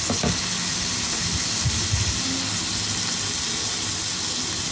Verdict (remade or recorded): recorded